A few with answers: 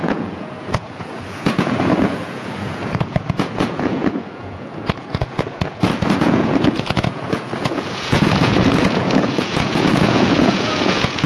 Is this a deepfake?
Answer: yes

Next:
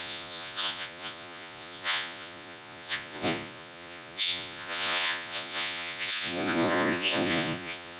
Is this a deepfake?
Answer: yes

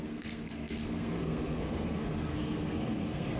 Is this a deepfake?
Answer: yes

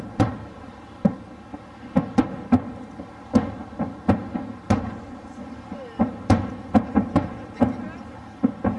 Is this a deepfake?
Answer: no